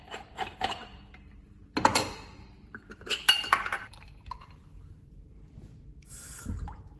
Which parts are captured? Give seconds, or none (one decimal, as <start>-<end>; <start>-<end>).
none